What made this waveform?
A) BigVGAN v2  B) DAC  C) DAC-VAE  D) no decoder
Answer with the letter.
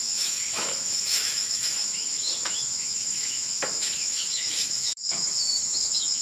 C